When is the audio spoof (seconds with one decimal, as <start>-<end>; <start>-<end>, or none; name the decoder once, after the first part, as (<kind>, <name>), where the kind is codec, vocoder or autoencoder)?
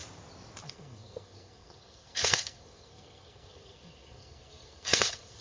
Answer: 0.6-5.4 (codec, SNAC)